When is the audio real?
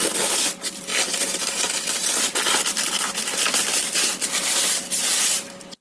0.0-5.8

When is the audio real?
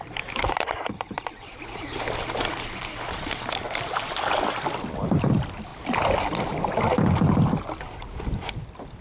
0.0-9.0